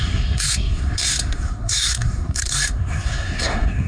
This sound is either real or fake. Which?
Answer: fake